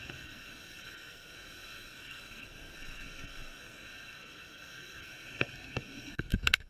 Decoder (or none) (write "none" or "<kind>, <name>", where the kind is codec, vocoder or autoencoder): codec, SNAC